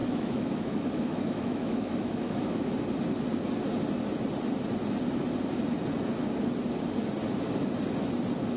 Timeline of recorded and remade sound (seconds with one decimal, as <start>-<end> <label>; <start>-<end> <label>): 0.0-2.7 remade; 2.7-8.6 recorded